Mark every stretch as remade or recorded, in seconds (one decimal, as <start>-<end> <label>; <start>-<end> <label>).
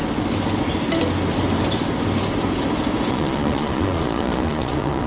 0.0-3.1 recorded; 3.1-5.1 remade